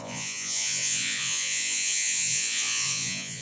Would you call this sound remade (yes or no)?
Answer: yes